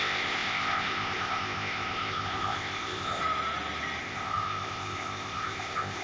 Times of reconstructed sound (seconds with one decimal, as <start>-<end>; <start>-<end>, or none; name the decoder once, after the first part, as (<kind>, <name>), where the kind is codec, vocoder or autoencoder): 0.0-3.2 (codec, ZipCodec); 4.0-6.0